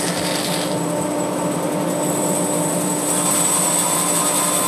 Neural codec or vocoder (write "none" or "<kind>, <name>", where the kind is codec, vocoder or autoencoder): none